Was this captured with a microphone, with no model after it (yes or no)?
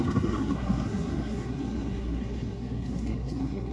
no